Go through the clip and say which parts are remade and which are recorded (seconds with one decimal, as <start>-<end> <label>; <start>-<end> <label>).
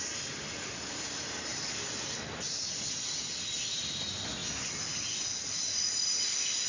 0.0-6.7 recorded